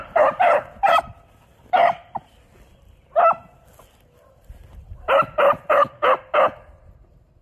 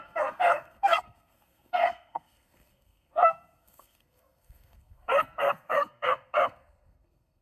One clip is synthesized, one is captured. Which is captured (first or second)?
first